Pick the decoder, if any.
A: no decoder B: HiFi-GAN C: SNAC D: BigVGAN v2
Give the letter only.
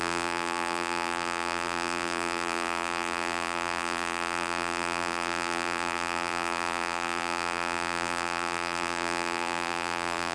D